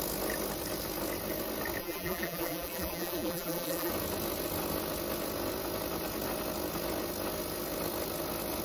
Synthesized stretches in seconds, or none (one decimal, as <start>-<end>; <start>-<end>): 1.8-3.9

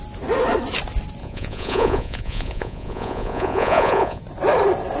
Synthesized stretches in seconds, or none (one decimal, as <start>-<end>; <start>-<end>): 1.2-4.2

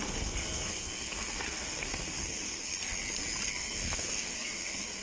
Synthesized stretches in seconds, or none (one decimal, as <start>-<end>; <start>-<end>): 0.0-2.7; 3.5-5.0